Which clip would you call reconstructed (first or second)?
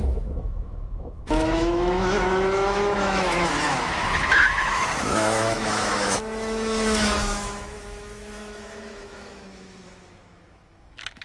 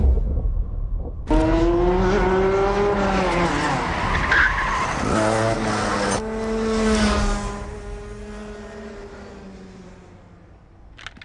first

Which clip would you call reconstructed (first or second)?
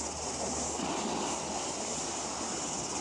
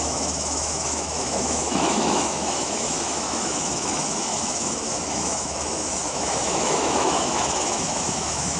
second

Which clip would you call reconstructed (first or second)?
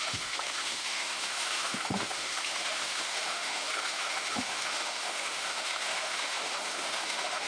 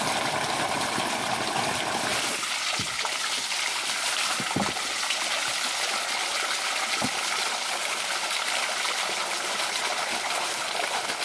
first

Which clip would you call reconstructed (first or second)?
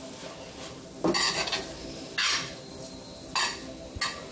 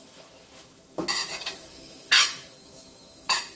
second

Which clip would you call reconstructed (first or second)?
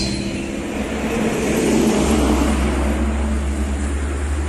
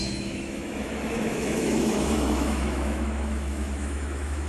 second